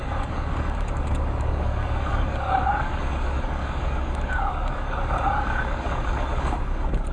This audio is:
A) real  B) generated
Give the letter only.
B